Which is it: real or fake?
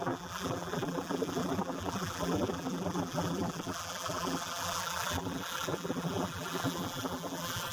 fake